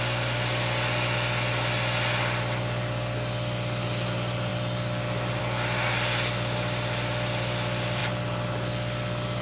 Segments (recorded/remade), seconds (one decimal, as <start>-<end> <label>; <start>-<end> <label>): 0.0-9.4 recorded